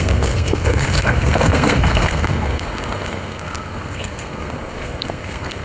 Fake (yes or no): yes